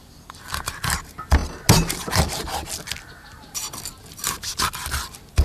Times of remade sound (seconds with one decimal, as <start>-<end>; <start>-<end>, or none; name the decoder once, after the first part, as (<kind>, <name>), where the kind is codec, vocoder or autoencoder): none